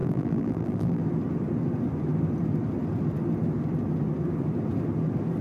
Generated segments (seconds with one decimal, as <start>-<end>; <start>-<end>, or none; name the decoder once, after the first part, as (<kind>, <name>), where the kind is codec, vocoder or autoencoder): 0.0-1.0 (vocoder, BigVGAN v2)

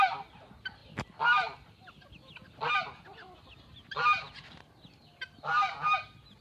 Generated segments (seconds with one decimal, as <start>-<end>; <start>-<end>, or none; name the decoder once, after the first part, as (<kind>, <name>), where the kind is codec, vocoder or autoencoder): none

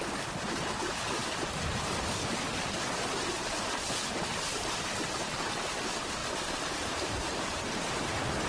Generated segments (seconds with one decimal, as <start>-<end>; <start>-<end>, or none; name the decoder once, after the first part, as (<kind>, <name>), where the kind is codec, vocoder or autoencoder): 1.2-5.5 (vocoder, BigVGAN v2); 6.2-8.5

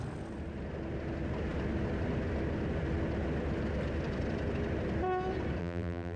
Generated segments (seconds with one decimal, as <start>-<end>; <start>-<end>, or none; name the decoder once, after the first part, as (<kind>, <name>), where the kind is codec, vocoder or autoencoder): 5.6-6.2 (vocoder, BigVGAN v2)

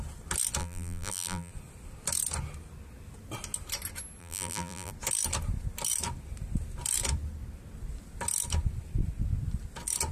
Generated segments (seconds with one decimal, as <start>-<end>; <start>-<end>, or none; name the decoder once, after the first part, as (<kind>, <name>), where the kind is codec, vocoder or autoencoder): 0.6-1.5 (vocoder, BigVGAN v2); 4.2-4.9

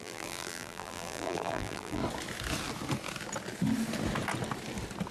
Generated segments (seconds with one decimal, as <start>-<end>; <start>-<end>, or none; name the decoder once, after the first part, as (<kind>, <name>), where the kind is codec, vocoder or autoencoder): 0.0-2.0 (vocoder, BigVGAN v2)

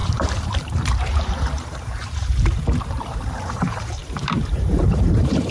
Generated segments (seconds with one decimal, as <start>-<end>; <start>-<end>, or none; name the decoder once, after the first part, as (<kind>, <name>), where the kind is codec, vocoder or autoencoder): 0.0-5.5 (vocoder, BigVGAN v2)

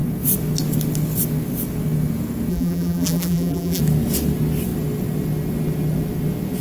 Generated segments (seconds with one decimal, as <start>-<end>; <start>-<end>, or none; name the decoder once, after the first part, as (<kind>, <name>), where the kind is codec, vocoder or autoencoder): 2.5-3.8 (vocoder, BigVGAN v2)